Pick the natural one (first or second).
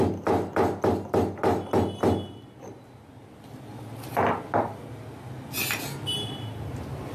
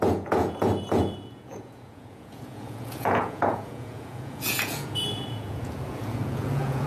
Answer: first